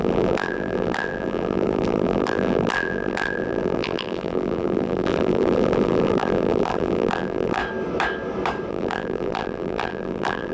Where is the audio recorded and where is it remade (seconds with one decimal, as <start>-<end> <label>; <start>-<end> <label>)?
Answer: 0.0-7.6 remade; 7.6-8.7 recorded; 8.7-10.5 remade

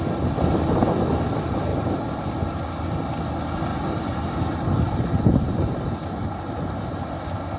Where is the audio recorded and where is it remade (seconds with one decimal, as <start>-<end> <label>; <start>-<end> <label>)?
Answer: 0.0-1.7 recorded; 1.7-2.3 remade; 2.3-3.7 recorded; 3.7-6.8 remade; 6.8-7.6 recorded

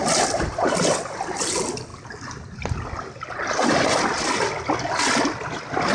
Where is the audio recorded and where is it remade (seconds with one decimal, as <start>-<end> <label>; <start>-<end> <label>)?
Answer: 0.0-5.9 recorded

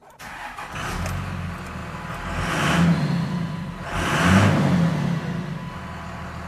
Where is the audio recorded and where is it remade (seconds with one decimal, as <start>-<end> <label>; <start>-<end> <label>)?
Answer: 0.0-6.5 recorded

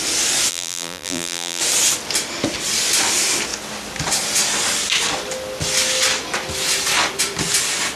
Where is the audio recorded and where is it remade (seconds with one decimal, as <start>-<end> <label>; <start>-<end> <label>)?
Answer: 0.0-0.5 recorded; 0.5-1.6 remade; 1.6-8.0 recorded

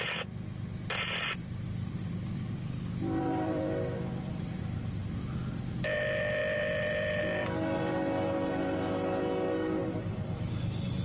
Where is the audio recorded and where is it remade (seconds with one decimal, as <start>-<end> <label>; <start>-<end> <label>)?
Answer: 0.0-1.4 recorded; 1.4-4.6 remade; 4.6-6.4 recorded; 6.4-7.2 remade; 7.2-9.8 recorded; 9.8-10.5 remade; 10.5-11.0 recorded

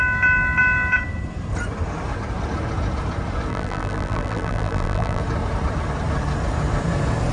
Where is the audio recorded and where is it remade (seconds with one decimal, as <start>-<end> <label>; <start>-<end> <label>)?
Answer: 0.0-3.5 recorded; 3.5-5.2 remade; 5.2-7.3 recorded